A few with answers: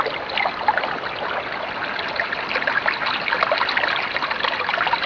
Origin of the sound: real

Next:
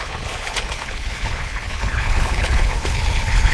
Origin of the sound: fake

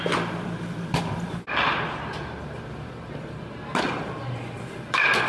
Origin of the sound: real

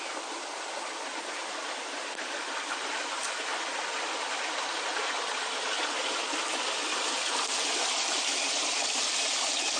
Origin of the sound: real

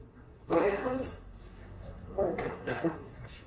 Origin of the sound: fake